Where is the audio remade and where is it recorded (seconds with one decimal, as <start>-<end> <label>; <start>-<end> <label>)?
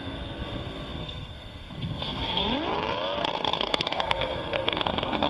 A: 0.0-2.4 remade; 2.4-3.3 recorded; 3.3-5.3 remade